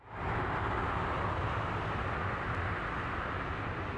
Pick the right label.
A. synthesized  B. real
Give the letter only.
B